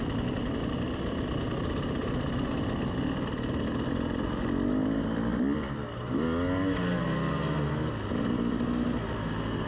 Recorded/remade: recorded